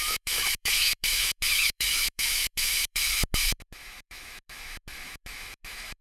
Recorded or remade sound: remade